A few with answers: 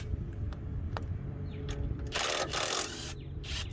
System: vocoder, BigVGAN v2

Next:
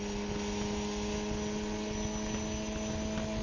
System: none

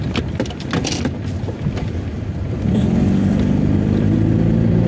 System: none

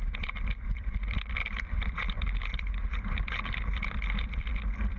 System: vocoder, BigVGAN v2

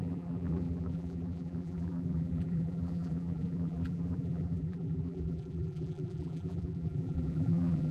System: vocoder, BigVGAN v2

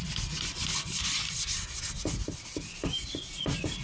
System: none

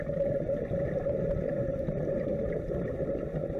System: none